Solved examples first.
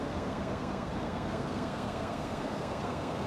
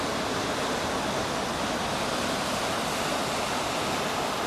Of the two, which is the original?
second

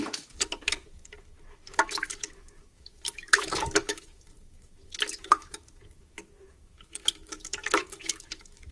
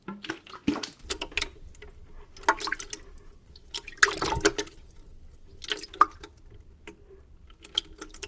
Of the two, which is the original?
second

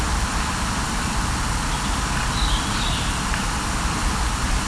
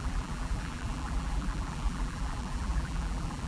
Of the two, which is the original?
first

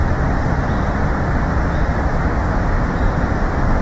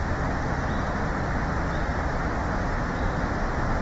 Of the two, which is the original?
second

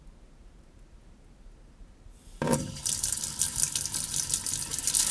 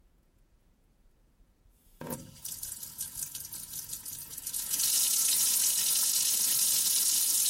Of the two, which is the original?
first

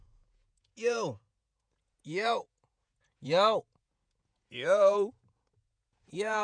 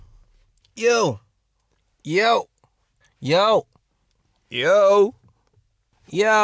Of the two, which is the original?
second